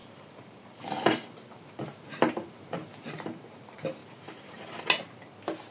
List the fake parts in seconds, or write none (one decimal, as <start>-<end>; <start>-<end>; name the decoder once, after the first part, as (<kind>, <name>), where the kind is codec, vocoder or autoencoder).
0.0-3.4 (vocoder, BigVGAN v2); 4.0-4.5